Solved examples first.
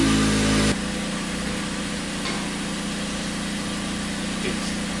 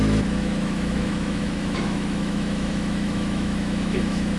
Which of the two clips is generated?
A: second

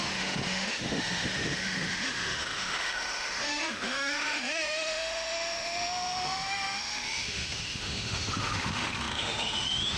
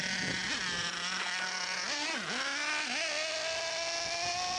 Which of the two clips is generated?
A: first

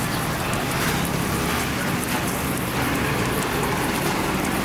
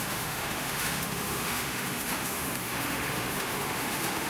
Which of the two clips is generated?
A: second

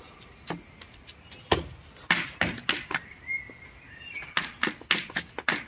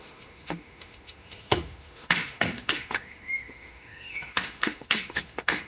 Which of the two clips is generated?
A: second